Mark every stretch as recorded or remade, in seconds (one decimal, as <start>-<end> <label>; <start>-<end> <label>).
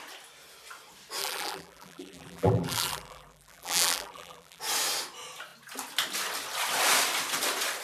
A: 0.0-1.2 recorded; 1.2-4.6 remade; 4.6-7.8 recorded